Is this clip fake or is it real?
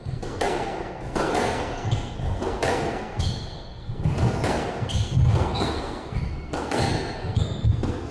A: fake